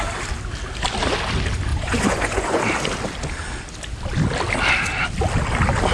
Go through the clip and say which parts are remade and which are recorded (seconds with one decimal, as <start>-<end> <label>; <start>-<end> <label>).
0.0-1.7 recorded; 1.7-2.6 remade; 2.6-5.9 recorded

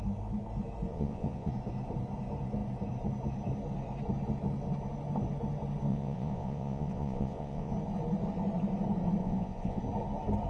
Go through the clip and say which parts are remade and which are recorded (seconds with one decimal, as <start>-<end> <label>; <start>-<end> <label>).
0.0-0.9 recorded; 0.9-1.5 remade; 1.5-5.9 recorded; 5.9-7.7 remade; 7.7-9.2 recorded; 9.2-9.8 remade; 9.8-10.5 recorded

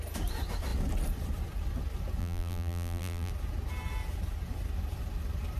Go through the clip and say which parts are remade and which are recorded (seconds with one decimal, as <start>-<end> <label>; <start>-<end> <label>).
0.0-2.2 recorded; 2.2-3.3 remade; 3.3-5.6 recorded

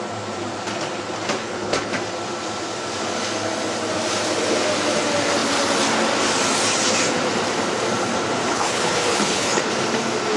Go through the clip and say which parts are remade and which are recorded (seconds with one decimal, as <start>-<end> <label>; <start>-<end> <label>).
0.0-1.4 recorded; 1.4-1.9 remade; 1.9-8.5 recorded; 8.5-9.7 remade; 9.7-10.4 recorded

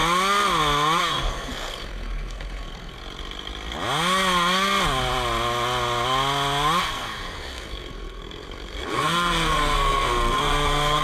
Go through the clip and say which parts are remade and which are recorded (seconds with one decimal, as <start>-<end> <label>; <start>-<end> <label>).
0.0-1.1 recorded; 1.1-3.0 remade; 3.0-6.8 recorded; 6.8-11.0 remade